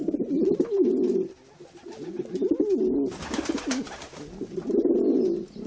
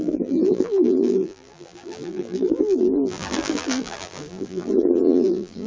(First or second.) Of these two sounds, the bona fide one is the first